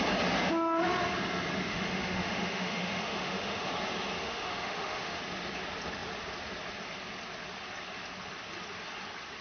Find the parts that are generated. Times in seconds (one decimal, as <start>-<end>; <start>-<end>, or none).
1.7-3.7; 4.2-5.2